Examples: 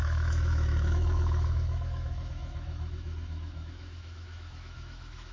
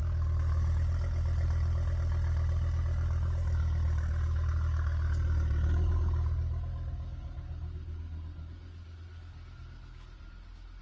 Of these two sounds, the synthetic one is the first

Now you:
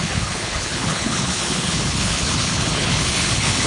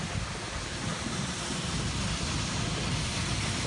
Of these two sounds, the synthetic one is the first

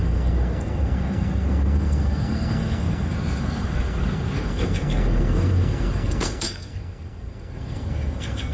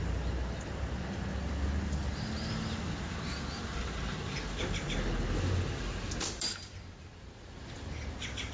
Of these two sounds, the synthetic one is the first